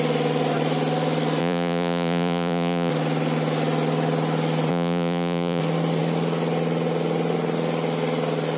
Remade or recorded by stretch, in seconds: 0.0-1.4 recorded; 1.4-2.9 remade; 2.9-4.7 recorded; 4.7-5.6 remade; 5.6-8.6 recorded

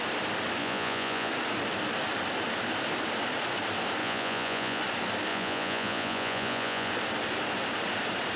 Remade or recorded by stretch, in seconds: 0.0-0.6 recorded; 0.6-1.3 remade; 1.3-4.0 recorded; 4.0-4.8 remade; 4.8-5.3 recorded; 5.3-6.9 remade; 6.9-8.4 recorded